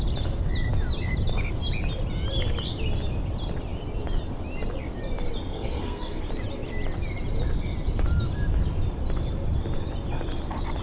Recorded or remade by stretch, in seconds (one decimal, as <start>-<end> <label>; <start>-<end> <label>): 0.0-5.5 recorded; 5.5-6.3 remade; 6.3-10.8 recorded